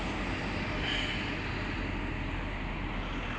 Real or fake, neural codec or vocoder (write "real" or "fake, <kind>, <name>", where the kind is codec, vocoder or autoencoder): real